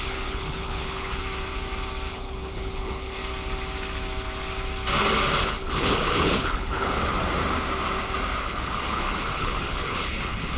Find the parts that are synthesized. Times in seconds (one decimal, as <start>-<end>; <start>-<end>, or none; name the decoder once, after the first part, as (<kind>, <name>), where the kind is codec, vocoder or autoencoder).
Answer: 0.0-1.2 (codec, HILCodec); 2.1-3.2; 5.4-7.1; 8.4-10.6